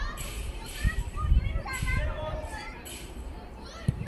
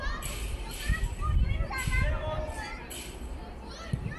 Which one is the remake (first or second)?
first